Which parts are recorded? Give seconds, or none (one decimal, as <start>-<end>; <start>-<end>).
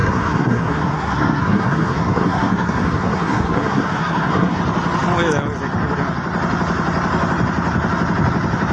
4.6-8.7